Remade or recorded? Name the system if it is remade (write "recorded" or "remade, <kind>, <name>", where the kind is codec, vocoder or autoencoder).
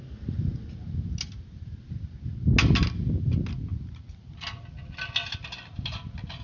recorded